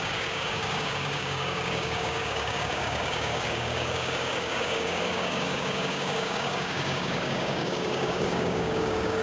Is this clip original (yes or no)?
no